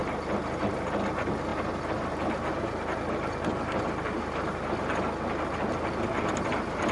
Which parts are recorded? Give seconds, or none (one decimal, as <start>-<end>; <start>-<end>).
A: 0.0-6.9